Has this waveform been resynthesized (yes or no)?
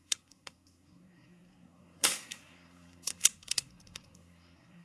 yes